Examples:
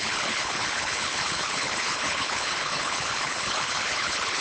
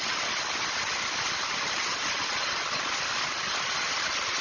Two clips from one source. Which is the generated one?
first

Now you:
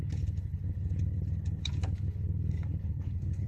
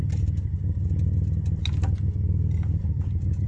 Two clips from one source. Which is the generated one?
first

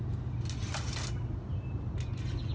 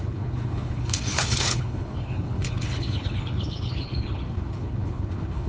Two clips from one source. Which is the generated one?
second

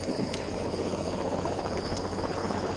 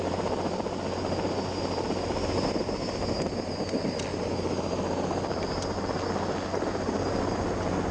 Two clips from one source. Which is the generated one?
first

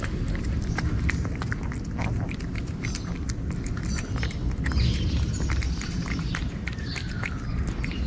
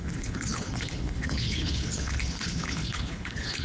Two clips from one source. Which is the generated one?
second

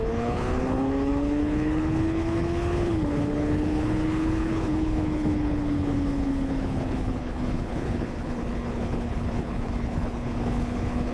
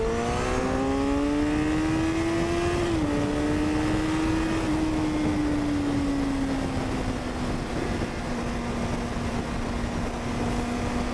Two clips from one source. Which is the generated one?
first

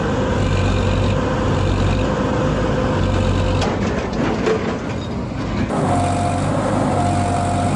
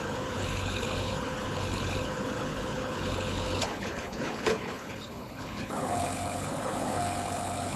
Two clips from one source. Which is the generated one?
second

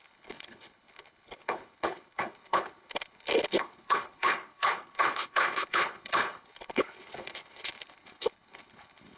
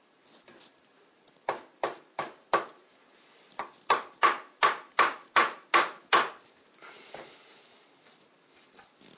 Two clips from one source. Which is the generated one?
first